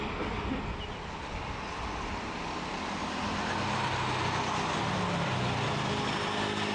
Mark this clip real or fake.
real